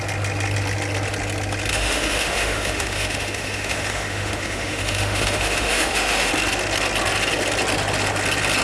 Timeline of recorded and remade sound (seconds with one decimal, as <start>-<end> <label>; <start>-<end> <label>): 0.0-1.7 recorded; 1.7-6.3 remade; 6.3-8.6 recorded